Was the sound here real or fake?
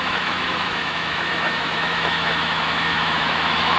fake